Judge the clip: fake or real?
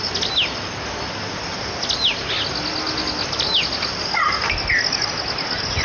real